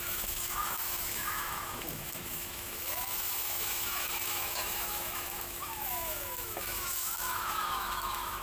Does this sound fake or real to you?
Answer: fake